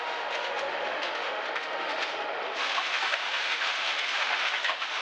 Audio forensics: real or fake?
fake